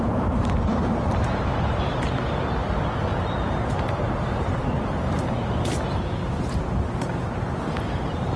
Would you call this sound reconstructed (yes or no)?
yes